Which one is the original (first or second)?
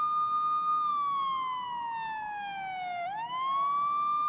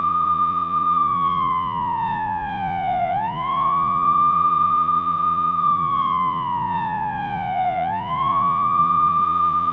first